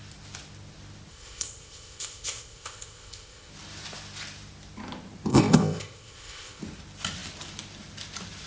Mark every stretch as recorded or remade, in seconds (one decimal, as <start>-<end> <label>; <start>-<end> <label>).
0.0-1.1 recorded; 1.1-3.5 remade; 3.5-5.3 recorded; 5.3-6.6 remade; 6.6-8.5 recorded